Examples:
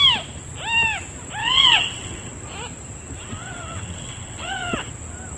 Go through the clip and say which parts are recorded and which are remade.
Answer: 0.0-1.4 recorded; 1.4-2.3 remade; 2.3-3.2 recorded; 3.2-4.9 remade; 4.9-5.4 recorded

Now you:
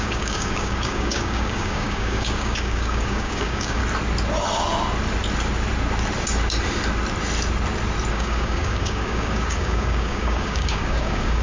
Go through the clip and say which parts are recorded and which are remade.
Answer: 0.0-3.8 remade; 3.8-8.1 recorded; 8.1-11.4 remade